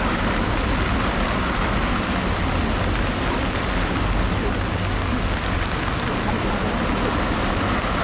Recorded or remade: recorded